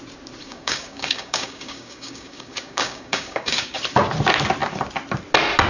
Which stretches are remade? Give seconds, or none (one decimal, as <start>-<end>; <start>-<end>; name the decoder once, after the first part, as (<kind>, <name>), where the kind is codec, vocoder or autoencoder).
0.4-3.8 (codec, DAC)